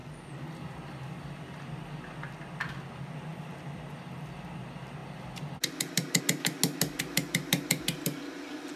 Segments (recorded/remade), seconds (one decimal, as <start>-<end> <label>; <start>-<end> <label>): 0.0-8.8 recorded